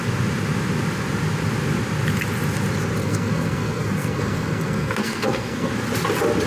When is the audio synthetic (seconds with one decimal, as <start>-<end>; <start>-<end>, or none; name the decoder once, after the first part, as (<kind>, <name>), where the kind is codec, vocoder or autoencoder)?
3.0-5.7 (codec, SNAC)